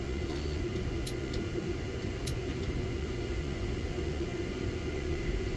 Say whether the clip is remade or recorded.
remade